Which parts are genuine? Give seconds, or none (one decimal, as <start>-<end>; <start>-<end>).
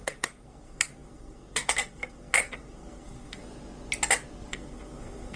3.4-4.5